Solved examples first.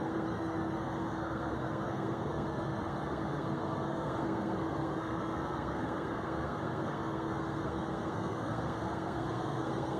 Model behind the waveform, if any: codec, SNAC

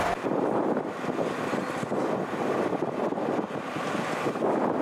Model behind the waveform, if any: none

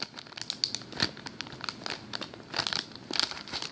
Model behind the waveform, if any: none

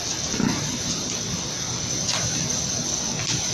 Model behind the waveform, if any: none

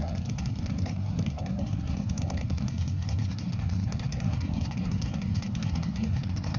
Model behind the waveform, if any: codec, SNAC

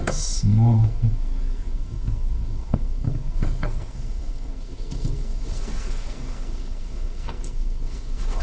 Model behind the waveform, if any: codec, SNAC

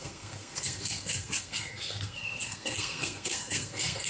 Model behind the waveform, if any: codec, SNAC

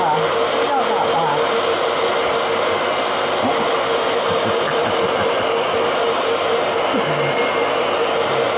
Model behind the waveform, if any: none